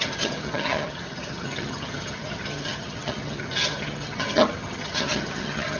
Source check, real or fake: fake